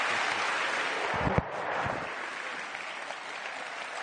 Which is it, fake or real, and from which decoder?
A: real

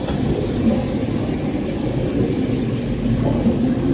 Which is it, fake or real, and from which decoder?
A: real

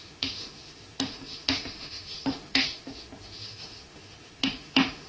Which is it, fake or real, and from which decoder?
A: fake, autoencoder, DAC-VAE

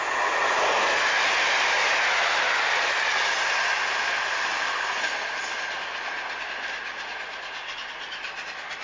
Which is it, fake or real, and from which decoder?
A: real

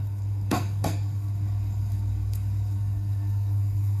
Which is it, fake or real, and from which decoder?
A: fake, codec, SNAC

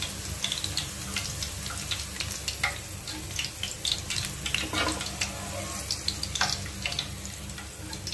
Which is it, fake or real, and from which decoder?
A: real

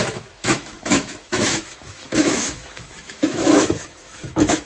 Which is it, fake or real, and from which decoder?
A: fake, autoencoder, DAC-VAE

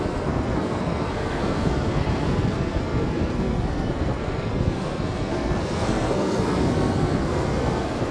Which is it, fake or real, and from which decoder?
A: fake, codec, SNAC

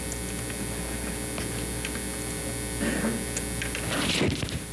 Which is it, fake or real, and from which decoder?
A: real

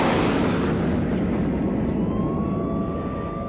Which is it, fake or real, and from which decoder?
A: real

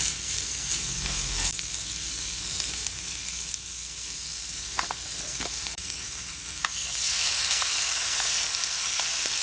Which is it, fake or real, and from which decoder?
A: fake, codec, SNAC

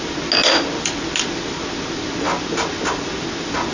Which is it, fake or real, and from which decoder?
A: real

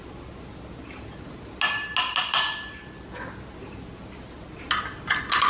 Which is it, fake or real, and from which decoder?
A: real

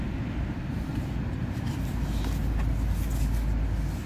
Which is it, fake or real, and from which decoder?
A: real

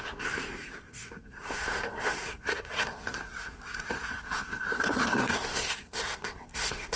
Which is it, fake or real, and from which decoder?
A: fake, codec, SNAC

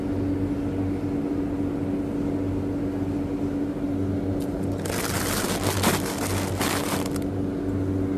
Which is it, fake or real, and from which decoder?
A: real